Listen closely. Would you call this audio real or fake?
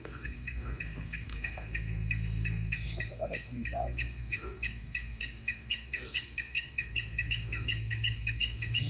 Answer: fake